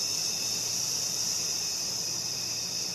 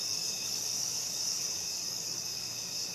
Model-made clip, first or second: second